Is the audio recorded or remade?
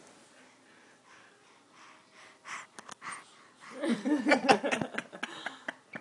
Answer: recorded